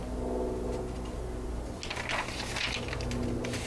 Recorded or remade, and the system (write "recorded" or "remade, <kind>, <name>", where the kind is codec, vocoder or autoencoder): recorded